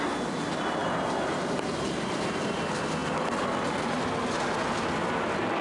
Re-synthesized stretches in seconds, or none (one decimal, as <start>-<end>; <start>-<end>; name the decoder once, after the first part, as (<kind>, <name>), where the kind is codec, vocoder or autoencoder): none